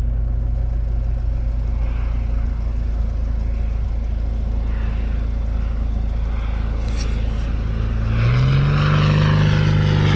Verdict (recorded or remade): recorded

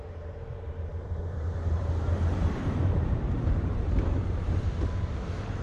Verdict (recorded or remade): remade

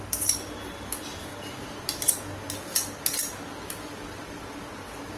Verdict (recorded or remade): recorded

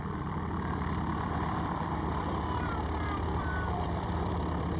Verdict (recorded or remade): remade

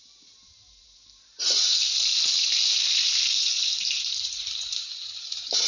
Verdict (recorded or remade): remade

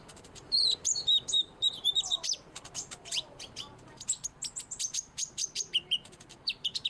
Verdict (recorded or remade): remade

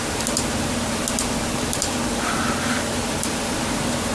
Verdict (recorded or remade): recorded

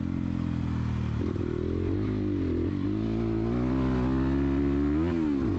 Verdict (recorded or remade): recorded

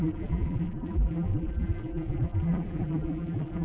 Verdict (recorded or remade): remade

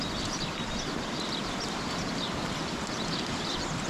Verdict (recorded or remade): remade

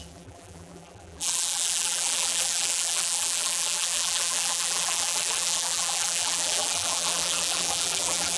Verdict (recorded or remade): remade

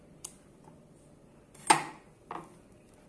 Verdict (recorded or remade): recorded